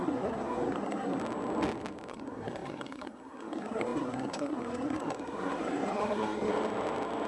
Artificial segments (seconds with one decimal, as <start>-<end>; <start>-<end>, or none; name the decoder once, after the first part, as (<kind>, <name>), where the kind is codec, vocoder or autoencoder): 0.0-1.2 (codec, SNAC); 2.1-6.5